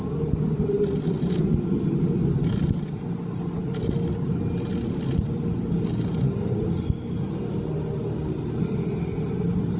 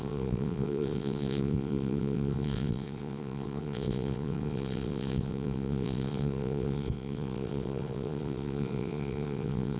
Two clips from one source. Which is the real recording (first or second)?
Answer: first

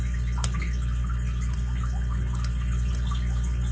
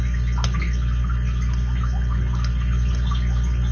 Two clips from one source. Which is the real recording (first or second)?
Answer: second